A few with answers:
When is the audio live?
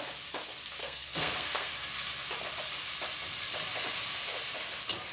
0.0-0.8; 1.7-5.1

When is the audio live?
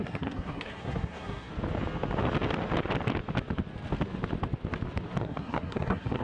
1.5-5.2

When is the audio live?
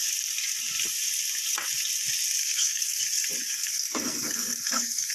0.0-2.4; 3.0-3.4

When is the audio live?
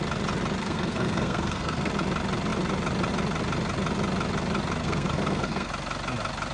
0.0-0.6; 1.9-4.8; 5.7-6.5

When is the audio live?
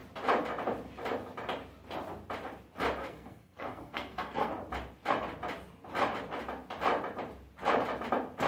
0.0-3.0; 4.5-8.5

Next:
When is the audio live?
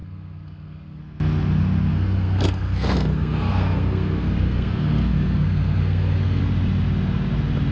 1.0-1.9; 6.4-7.7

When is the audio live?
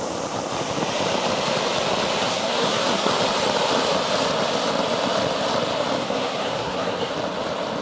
0.0-2.3; 3.1-6.0; 7.1-7.8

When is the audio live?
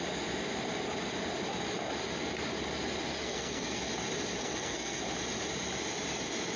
0.0-3.1; 3.8-4.4; 5.0-6.6